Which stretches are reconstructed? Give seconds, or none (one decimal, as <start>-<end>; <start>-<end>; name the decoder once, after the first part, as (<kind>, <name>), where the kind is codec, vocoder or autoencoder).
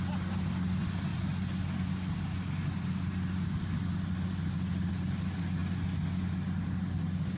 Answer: none